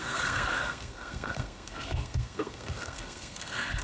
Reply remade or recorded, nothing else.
remade